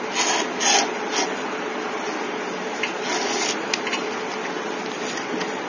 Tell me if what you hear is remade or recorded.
recorded